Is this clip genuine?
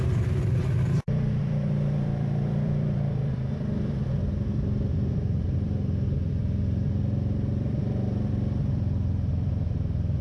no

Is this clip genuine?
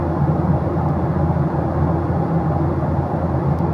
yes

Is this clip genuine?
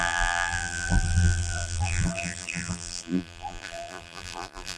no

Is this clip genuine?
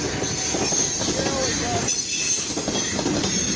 yes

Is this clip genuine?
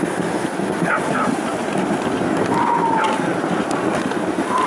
yes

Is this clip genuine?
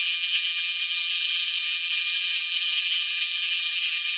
no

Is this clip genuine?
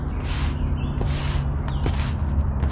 yes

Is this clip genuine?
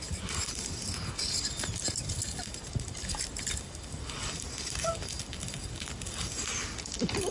no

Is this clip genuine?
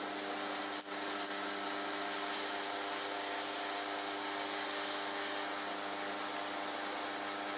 yes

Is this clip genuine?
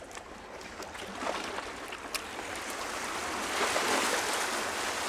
yes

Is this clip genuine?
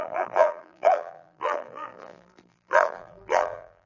no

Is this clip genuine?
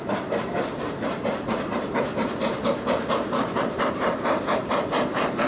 no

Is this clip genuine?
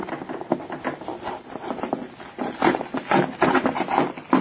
yes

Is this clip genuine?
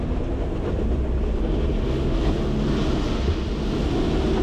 yes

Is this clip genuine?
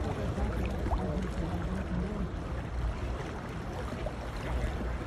yes